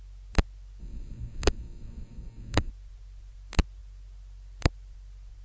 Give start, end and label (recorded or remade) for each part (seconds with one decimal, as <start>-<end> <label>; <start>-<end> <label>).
0.0-0.8 recorded; 0.8-2.7 remade; 2.7-5.4 recorded